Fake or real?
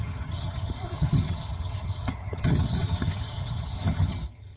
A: fake